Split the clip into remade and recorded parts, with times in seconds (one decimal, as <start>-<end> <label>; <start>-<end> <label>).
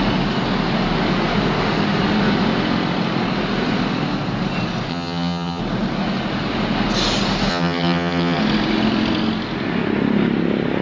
0.0-4.9 recorded; 4.9-5.6 remade; 5.6-7.5 recorded; 7.5-8.4 remade; 8.4-10.8 recorded